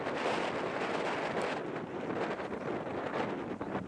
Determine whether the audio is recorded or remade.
recorded